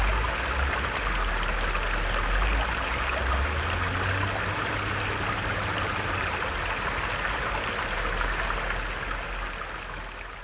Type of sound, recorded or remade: recorded